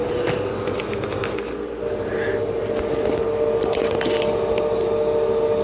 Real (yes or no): yes